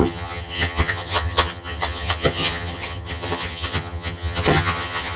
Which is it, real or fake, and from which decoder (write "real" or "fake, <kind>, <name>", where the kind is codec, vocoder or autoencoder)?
fake, vocoder, HiFi-GAN